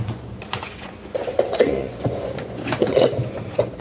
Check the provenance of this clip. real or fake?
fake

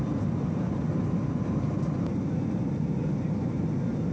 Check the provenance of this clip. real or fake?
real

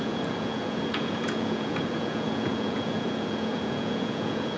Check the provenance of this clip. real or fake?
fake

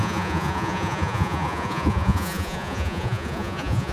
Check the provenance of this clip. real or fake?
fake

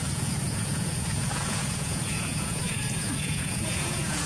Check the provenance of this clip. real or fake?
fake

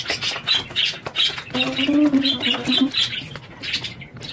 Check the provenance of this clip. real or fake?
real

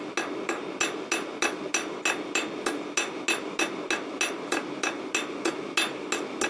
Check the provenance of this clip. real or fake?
real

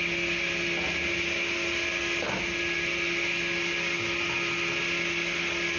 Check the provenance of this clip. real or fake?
real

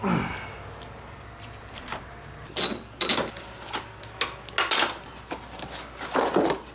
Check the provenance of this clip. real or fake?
real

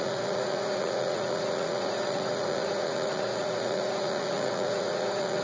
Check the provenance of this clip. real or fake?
fake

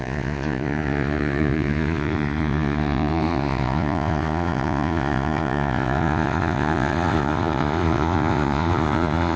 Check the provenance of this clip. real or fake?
fake